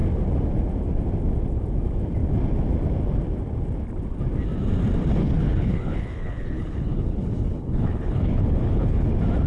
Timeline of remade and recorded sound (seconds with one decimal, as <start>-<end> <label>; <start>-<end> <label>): 0.0-5.4 recorded; 5.4-9.1 remade; 9.1-9.5 recorded